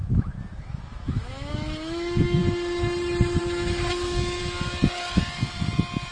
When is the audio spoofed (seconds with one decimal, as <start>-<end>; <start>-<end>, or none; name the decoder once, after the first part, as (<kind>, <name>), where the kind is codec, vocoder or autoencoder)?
0.0-2.4 (autoencoder, DAC-VAE); 3.4-4.4